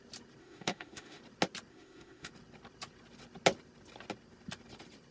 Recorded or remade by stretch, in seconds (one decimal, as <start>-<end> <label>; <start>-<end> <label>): 0.0-0.4 recorded; 0.4-1.2 remade; 1.2-1.7 recorded; 1.7-2.3 remade; 2.3-5.1 recorded